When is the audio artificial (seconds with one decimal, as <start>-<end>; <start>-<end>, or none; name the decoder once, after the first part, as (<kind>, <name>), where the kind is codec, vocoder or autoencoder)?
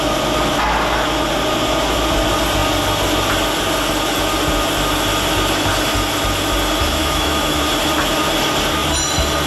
7.0-7.6 (autoencoder, DAC-VAE)